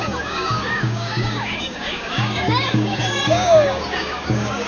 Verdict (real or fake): fake